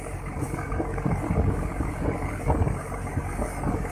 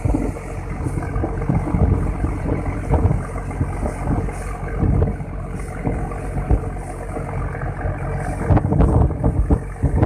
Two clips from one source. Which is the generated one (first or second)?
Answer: first